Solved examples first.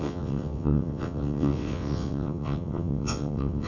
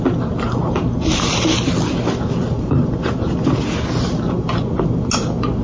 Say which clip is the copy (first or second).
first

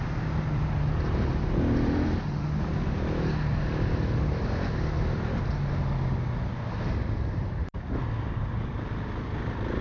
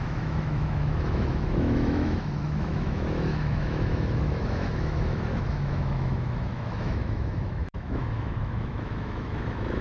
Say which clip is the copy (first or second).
second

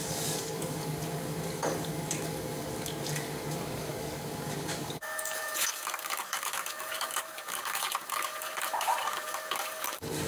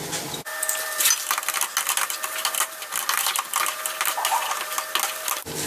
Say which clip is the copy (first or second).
first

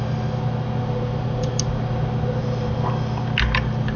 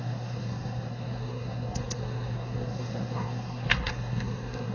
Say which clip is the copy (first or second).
second